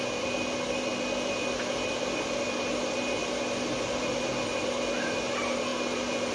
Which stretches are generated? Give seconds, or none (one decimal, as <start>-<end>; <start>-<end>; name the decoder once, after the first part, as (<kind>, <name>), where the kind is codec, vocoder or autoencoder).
none